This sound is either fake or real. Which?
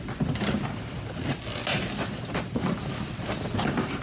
real